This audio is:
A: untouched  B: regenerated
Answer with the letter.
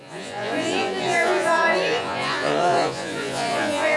B